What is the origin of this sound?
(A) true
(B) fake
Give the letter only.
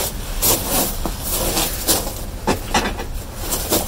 A